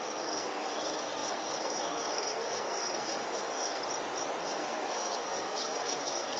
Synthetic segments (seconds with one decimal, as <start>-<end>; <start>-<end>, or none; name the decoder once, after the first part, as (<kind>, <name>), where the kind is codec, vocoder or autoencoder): 0.0-3.8 (codec, SNAC); 4.4-6.4